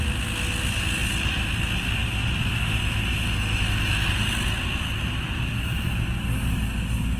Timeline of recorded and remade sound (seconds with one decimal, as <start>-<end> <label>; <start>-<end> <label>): 0.0-7.2 recorded